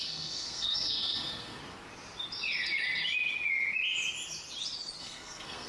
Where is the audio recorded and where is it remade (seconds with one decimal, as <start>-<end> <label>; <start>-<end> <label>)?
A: 0.0-1.6 remade; 1.6-5.0 recorded; 5.0-5.7 remade